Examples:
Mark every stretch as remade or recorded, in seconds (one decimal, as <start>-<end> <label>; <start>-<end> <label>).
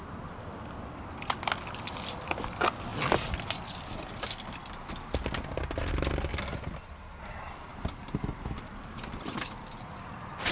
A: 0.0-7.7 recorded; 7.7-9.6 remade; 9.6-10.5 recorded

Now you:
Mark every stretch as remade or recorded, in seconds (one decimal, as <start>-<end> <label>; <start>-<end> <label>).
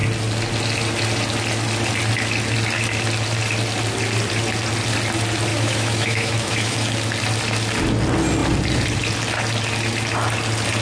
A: 0.0-5.5 recorded; 5.5-6.9 remade; 6.9-10.8 recorded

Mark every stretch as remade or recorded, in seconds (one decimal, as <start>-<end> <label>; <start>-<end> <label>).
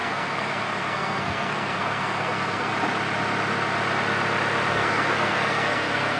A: 0.0-2.7 remade; 2.7-4.7 recorded; 4.7-6.2 remade